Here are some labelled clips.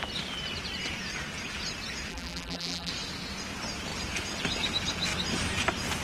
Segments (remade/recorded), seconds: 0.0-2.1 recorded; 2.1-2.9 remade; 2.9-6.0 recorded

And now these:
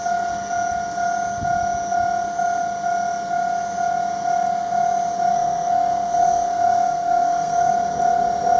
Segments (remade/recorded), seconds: 0.0-5.3 recorded; 5.3-7.7 remade; 7.7-8.6 recorded